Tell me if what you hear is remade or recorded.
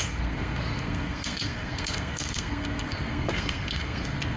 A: remade